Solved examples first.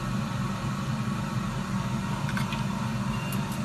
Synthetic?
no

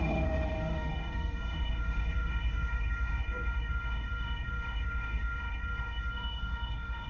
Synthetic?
yes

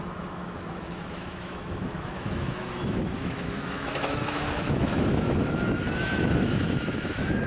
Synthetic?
yes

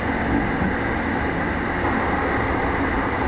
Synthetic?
no